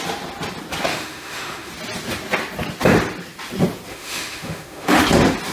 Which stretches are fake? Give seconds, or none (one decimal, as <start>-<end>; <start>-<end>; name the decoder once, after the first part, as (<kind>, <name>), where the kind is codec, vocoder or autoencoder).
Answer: 0.9-1.7 (autoencoder, DAC-VAE); 3.9-5.0